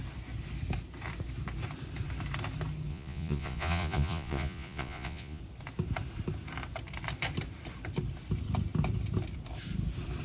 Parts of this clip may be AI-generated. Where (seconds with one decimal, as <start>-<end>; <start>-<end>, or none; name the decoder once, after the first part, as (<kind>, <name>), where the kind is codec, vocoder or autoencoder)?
2.9-5.4 (vocoder, Vocos)